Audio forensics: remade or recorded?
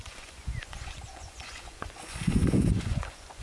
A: remade